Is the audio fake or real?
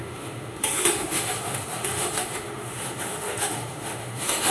fake